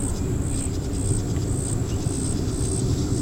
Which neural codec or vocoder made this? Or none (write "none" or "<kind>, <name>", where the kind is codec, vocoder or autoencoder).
none